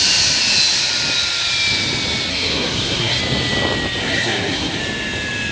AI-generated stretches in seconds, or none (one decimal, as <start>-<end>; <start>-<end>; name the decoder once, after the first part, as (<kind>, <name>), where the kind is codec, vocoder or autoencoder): 2.3-3.2 (codec, SNAC); 4.0-4.8